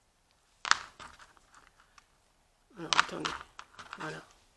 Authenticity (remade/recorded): recorded